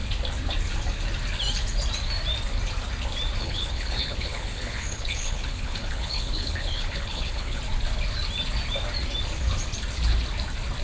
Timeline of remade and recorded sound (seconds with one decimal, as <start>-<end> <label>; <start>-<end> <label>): 0.0-3.4 recorded; 3.4-7.6 remade; 7.6-10.8 recorded